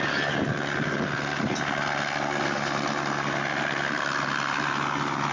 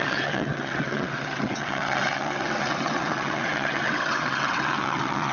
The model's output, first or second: second